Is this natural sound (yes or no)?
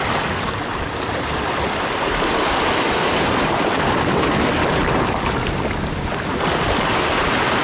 yes